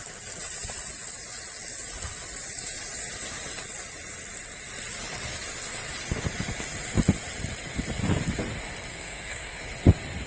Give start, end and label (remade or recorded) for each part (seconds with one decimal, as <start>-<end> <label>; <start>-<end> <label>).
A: 0.0-8.9 recorded; 8.9-9.6 remade; 9.6-10.3 recorded